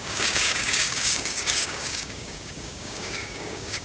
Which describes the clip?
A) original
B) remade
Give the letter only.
B